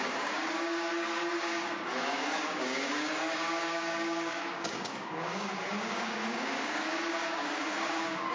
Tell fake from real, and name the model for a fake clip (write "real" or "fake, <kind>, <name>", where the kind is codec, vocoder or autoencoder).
fake, codec, DAC